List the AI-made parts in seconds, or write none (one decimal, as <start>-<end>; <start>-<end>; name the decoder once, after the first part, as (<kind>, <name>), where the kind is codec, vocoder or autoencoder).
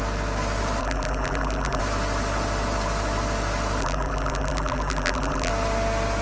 0.8-1.8 (vocoder, BigVGAN v2); 3.8-5.5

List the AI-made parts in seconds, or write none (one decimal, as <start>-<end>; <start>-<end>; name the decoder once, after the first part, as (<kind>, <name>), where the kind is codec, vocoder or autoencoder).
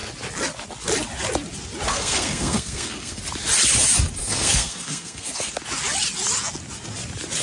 1.9-3.2 (codec, SNAC); 4.2-5.5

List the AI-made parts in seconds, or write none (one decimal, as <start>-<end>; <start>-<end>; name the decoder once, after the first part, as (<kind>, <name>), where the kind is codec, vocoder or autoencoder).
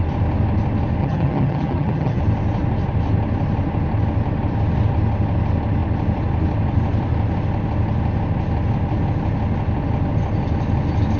1.0-2.2 (vocoder, HiFi-GAN)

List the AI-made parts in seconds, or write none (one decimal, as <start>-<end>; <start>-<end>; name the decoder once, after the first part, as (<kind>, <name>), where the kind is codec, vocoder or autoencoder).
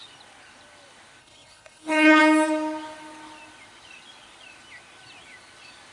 1.2-2.2 (codec, HILCodec)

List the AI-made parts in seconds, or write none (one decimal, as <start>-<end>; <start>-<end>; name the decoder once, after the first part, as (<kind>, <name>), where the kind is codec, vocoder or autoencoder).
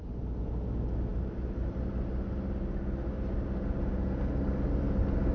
none